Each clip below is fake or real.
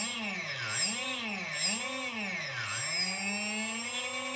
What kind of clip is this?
real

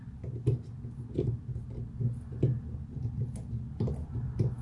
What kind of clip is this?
real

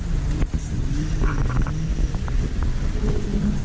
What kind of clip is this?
real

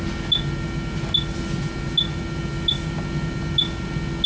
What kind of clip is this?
real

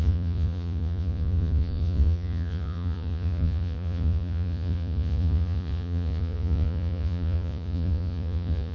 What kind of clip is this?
fake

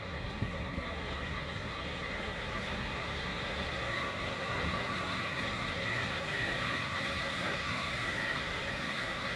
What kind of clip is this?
fake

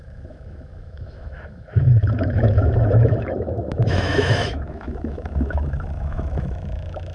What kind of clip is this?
fake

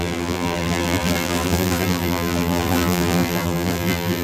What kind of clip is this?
fake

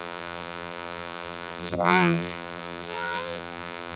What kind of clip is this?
fake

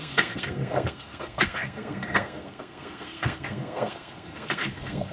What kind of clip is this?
fake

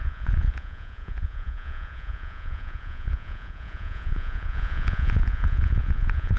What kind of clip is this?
fake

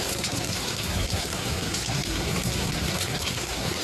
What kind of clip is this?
fake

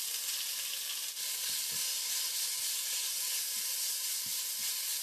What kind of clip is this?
real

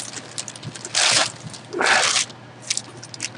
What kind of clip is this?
real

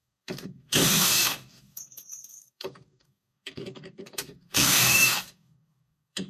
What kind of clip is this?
fake